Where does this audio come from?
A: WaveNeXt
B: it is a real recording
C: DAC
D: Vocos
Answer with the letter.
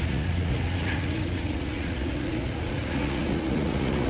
D